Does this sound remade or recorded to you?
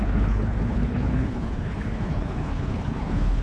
remade